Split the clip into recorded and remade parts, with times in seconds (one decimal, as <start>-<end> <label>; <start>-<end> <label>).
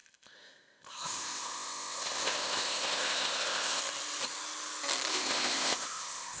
0.0-3.8 remade; 3.8-5.1 recorded; 5.1-6.4 remade